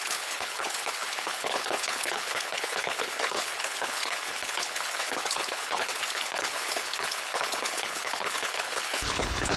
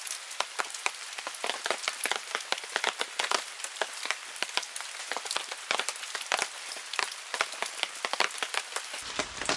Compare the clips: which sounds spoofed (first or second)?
first